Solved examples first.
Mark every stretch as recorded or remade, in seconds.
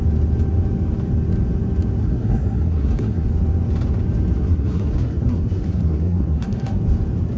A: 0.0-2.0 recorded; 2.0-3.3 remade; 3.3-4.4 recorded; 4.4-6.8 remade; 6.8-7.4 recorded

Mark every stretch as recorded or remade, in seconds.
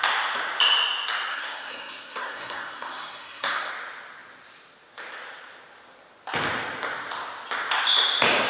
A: 0.0-1.3 recorded; 1.3-3.7 remade; 3.7-8.5 recorded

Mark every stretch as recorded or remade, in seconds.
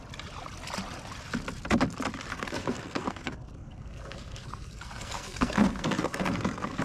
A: 0.0-2.3 recorded; 2.3-6.8 remade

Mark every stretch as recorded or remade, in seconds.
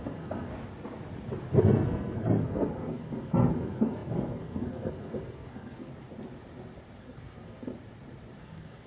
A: 0.0-0.5 remade; 0.5-1.6 recorded; 1.6-5.9 remade; 5.9-7.0 recorded; 7.0-7.7 remade; 7.7-8.4 recorded; 8.4-8.9 remade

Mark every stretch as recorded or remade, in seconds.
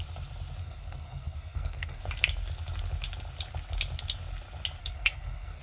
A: 0.0-0.6 recorded; 0.6-2.0 remade; 2.0-4.8 recorded; 4.8-5.6 remade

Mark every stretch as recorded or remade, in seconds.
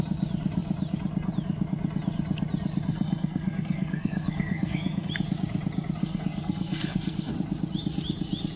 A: 0.0-2.9 recorded; 2.9-5.1 remade; 5.1-6.0 recorded; 6.0-7.3 remade; 7.3-8.6 recorded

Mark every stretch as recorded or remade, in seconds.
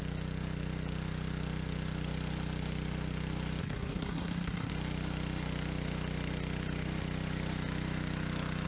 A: 0.0-3.6 recorded; 3.6-4.7 remade; 4.7-8.7 recorded